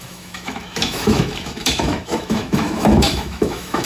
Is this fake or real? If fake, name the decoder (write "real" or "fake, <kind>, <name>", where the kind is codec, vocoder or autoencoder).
fake, autoencoder, DAC-VAE